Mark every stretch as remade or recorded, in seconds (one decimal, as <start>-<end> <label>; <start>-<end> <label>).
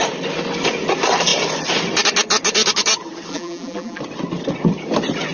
0.0-3.3 recorded; 3.3-4.0 remade; 4.0-5.3 recorded